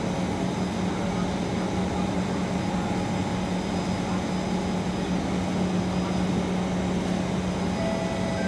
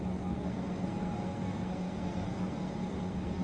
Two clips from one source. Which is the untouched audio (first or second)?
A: first